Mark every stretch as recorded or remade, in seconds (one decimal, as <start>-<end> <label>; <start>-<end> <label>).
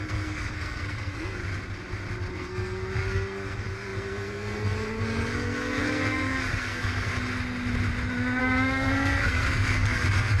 0.0-1.4 remade; 1.4-2.3 recorded; 2.3-7.1 remade; 7.1-8.4 recorded; 8.4-10.4 remade